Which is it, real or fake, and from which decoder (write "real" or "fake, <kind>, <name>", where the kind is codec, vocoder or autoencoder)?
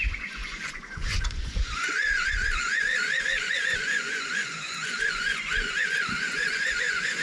fake, vocoder, Vocos